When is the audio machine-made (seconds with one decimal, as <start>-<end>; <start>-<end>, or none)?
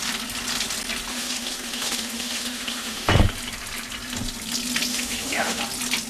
1.1-3.1; 4.9-5.6